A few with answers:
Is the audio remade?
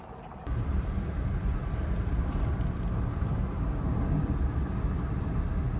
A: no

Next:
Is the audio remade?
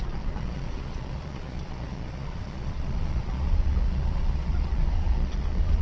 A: yes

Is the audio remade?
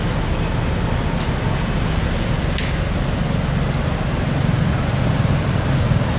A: no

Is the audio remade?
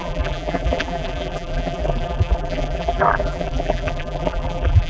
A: yes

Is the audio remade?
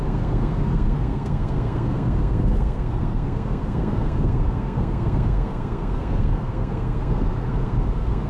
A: yes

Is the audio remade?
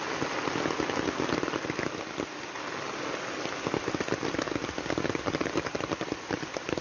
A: no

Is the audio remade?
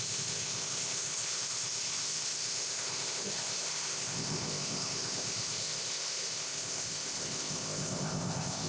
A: yes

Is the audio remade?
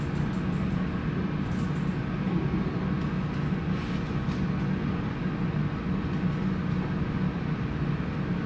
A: no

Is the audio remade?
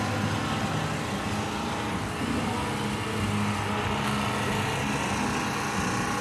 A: no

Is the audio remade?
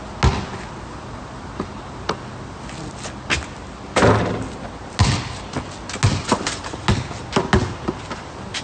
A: no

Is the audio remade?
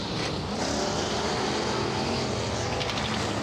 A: no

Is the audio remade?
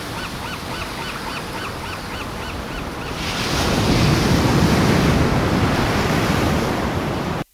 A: no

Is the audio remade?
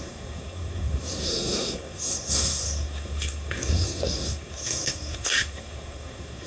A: yes